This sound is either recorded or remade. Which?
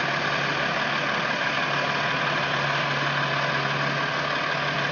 recorded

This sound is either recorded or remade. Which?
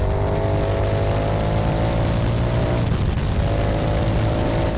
recorded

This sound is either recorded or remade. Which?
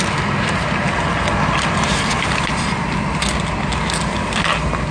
recorded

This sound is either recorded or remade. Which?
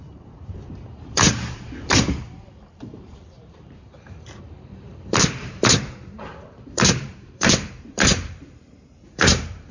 remade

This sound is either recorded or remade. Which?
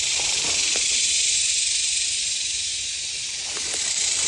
remade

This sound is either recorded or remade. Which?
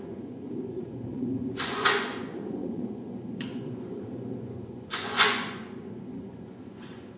remade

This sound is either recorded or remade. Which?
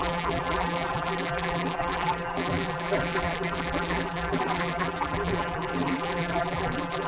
remade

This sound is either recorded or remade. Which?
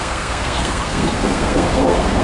remade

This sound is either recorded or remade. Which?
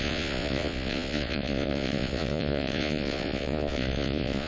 remade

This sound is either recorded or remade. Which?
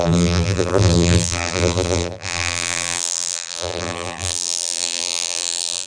remade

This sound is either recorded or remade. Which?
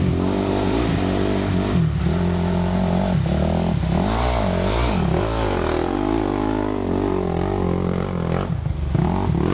recorded